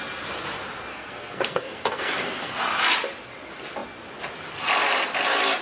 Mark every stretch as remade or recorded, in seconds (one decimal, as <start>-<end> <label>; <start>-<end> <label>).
0.0-0.9 recorded; 0.9-2.6 remade; 2.6-5.6 recorded